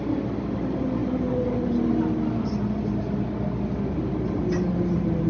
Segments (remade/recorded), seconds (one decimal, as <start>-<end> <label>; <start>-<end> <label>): 0.0-5.3 recorded